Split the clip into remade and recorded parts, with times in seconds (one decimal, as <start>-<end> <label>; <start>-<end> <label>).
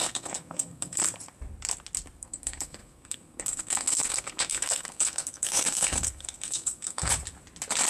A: 0.0-1.0 remade; 1.0-2.2 recorded; 2.2-7.1 remade; 7.1-7.9 recorded